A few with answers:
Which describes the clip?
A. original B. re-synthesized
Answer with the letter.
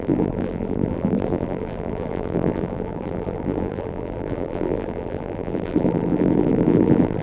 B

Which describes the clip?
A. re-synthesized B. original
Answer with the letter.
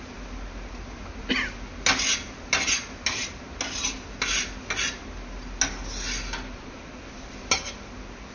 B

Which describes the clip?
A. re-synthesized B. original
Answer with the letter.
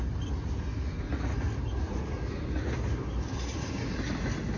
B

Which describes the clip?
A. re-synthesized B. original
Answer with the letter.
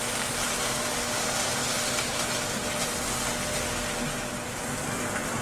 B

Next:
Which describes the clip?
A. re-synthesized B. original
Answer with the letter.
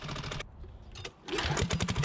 B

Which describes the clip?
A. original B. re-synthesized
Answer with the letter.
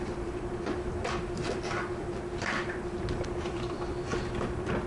B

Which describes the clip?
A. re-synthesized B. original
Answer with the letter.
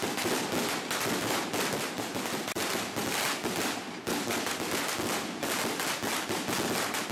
B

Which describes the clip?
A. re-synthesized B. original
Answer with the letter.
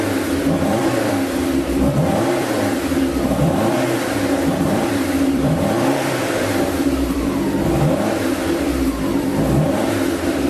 A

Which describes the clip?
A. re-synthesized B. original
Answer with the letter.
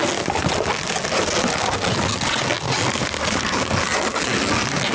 B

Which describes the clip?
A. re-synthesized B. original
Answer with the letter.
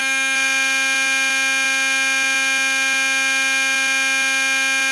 B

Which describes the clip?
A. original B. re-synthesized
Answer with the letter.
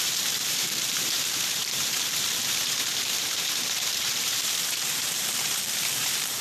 B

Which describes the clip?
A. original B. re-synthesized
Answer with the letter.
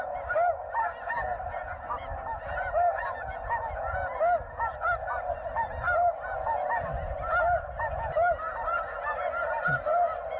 A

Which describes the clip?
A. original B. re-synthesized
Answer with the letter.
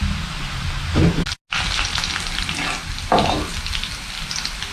A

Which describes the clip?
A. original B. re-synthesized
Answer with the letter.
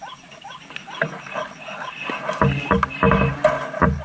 A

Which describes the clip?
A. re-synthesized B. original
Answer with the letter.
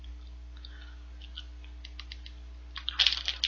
B